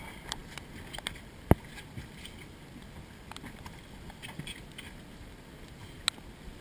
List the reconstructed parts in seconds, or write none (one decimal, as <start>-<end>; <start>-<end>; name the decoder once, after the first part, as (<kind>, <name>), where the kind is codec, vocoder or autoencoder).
none